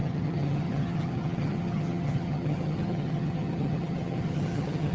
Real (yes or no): no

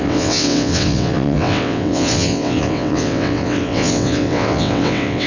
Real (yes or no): no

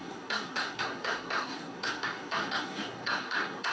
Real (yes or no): no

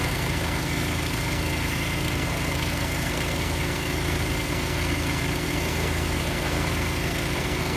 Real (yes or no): no